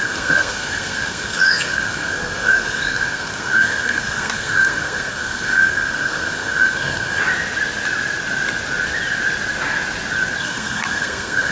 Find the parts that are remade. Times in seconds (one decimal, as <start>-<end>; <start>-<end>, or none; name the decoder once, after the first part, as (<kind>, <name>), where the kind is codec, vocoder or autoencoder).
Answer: 0.0-7.2 (codec, SNAC); 10.4-11.5